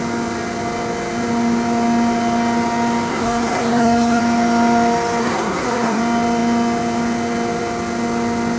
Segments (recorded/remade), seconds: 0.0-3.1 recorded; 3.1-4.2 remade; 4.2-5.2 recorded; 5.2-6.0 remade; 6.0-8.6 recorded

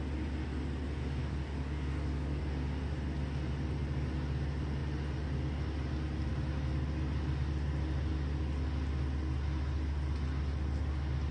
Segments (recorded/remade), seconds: 0.0-1.2 recorded; 1.2-2.4 remade; 2.4-11.3 recorded

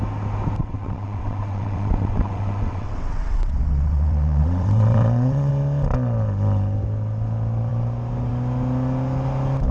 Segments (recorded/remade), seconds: 0.0-0.6 recorded; 0.6-5.5 remade; 5.5-9.7 recorded